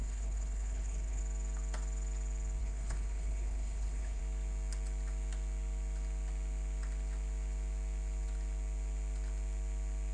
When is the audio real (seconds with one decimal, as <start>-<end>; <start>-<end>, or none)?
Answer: 1.2-2.6; 4.2-10.1

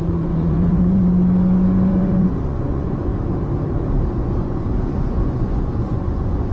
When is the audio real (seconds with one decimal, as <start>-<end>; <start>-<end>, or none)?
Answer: 1.0-1.9; 3.1-4.2

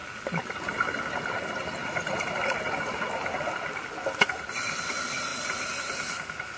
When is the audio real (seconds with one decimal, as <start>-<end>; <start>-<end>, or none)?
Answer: 1.0-1.8; 2.3-6.6